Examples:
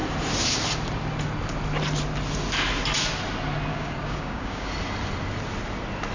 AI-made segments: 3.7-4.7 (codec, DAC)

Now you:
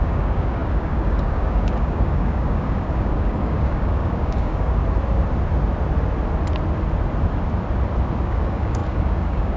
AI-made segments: 0.0-4.8 (codec, DAC); 8.2-9.6

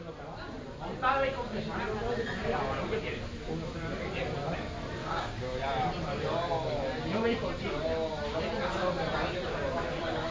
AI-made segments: 5.0-5.6 (codec, DAC)